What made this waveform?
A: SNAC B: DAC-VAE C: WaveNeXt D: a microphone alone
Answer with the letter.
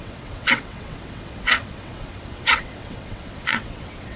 C